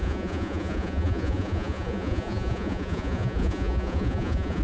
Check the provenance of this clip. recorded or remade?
remade